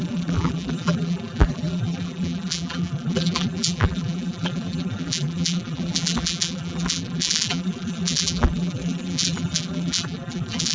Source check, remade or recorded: remade